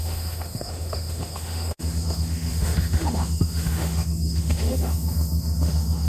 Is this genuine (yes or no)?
no